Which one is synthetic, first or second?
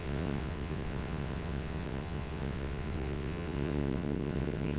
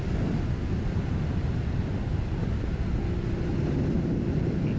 first